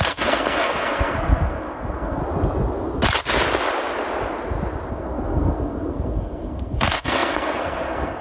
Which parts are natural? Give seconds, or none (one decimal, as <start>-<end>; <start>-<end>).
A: 2.2-4.9